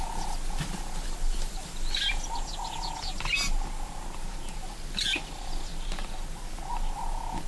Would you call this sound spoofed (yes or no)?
no